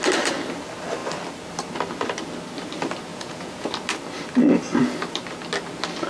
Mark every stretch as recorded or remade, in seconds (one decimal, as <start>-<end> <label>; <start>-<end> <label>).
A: 0.0-3.1 recorded; 3.1-3.7 remade; 3.7-6.1 recorded